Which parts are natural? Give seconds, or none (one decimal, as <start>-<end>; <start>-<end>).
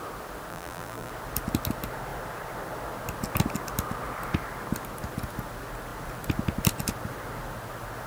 0.0-0.5; 1.1-8.1